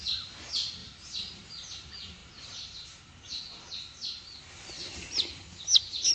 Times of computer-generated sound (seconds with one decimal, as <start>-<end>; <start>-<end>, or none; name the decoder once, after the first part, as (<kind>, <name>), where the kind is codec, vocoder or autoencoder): none